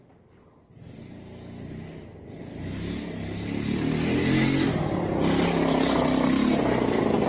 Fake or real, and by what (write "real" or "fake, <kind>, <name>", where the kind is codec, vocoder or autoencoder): real